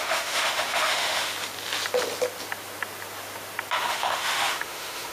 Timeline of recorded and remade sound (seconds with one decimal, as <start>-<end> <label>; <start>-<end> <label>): 0.0-1.3 remade; 1.3-3.8 recorded; 3.8-5.1 remade